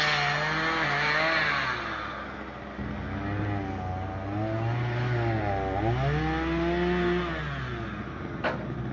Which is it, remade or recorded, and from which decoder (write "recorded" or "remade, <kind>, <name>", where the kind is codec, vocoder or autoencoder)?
recorded